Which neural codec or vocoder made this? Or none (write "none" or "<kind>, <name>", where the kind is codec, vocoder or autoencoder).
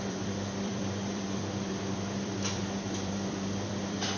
vocoder, BigVGAN v2